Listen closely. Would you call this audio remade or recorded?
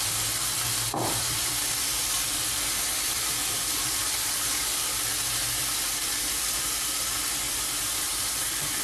remade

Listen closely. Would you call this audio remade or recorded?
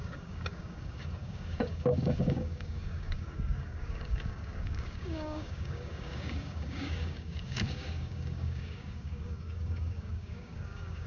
remade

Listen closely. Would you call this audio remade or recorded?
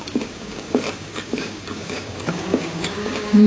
remade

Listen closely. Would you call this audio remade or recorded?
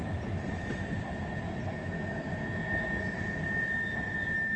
recorded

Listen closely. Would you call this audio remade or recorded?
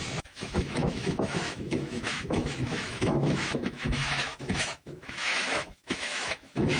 remade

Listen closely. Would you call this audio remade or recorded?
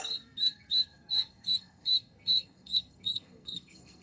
remade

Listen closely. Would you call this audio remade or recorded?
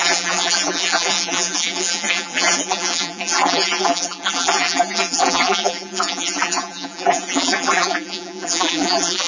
remade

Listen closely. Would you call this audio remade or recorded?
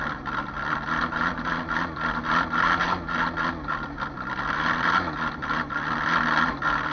recorded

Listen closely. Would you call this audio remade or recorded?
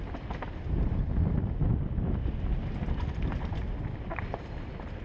recorded